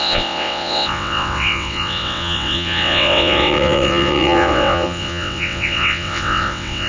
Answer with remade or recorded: remade